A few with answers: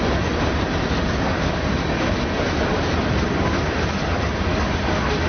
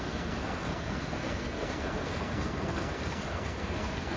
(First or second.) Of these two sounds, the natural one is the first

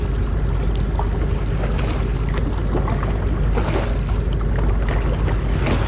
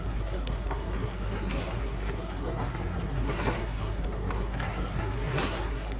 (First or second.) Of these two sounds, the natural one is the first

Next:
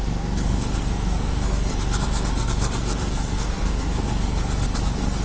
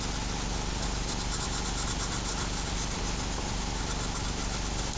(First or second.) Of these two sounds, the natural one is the second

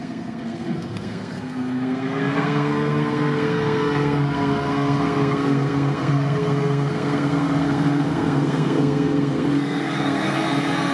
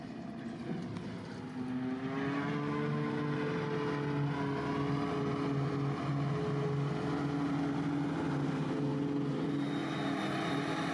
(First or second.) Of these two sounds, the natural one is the second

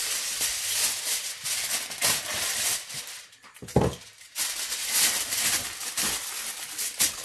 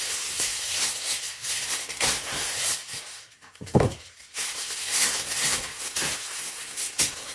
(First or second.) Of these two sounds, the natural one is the first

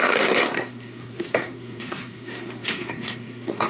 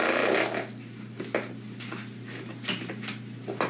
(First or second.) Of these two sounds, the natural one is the second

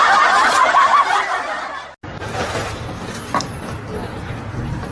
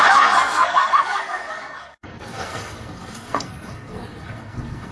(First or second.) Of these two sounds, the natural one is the first